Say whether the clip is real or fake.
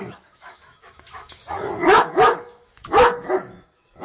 fake